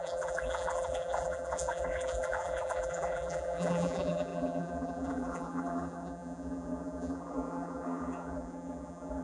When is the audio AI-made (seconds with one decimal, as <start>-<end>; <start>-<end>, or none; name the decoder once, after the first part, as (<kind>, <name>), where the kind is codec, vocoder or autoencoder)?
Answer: 0.0-9.2 (vocoder, BigVGAN v2)